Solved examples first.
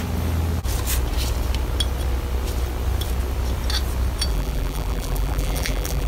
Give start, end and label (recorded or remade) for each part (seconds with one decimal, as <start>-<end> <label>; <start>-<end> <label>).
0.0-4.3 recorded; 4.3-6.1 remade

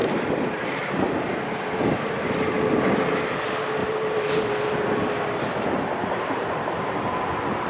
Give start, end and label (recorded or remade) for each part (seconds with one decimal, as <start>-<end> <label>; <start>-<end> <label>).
0.0-2.4 remade; 2.4-3.8 recorded; 3.8-5.7 remade; 5.7-7.7 recorded

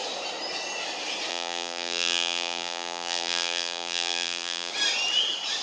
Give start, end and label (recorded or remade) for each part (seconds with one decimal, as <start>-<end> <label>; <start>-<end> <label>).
0.0-1.3 recorded; 1.3-4.7 remade; 4.7-5.6 recorded